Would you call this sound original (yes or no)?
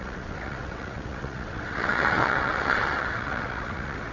no